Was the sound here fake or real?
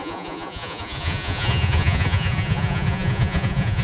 fake